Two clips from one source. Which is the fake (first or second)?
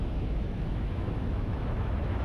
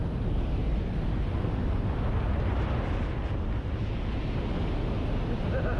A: first